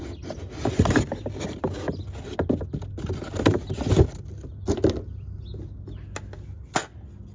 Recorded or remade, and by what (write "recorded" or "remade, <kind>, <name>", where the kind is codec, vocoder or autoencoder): recorded